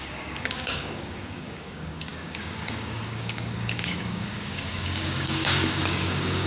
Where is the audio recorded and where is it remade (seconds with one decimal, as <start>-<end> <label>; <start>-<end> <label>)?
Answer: 0.0-6.5 remade